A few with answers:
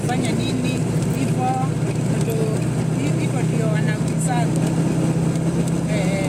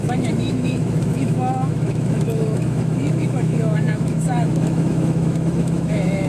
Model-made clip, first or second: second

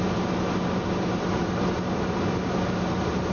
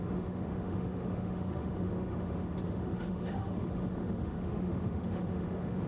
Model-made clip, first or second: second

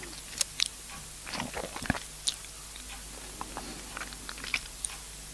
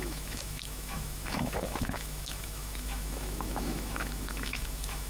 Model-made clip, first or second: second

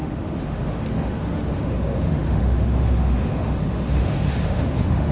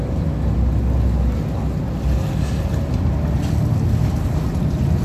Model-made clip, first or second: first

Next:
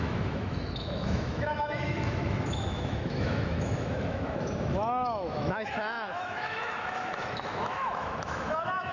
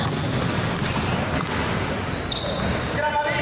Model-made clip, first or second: first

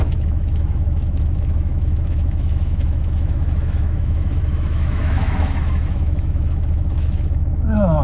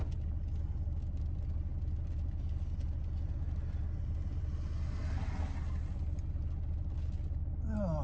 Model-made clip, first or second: first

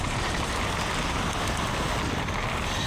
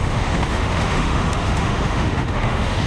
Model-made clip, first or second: second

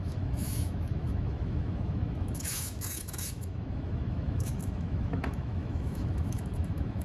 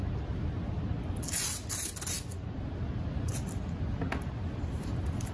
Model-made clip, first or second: first